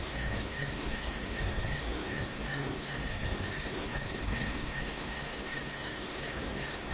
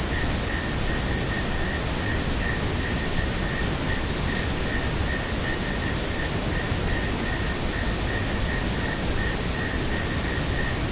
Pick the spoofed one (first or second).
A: first